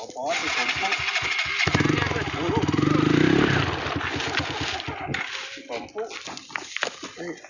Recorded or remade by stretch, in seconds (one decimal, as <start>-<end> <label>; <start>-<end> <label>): 0.0-7.5 recorded